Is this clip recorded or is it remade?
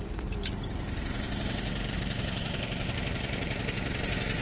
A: remade